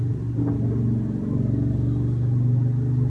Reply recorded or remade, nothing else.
recorded